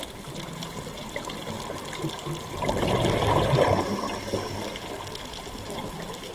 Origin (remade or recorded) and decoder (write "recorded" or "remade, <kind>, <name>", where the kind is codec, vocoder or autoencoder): recorded